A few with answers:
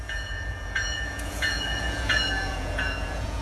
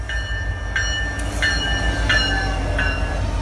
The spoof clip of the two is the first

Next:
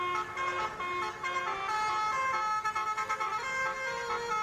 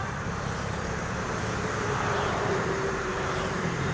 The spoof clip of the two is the second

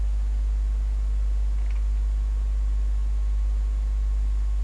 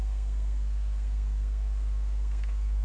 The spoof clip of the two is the second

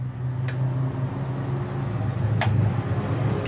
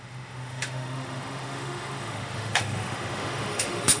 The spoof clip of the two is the second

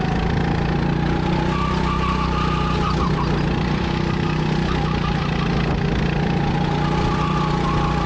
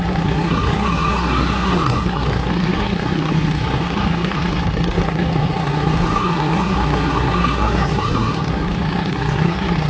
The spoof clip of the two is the second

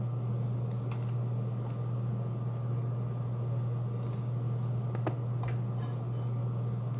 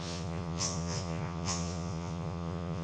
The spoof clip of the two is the second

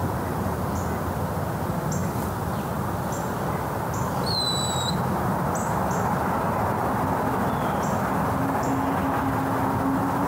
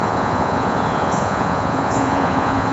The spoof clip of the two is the second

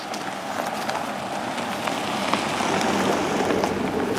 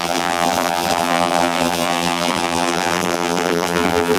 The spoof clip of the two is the second